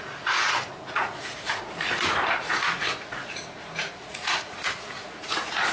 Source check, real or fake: fake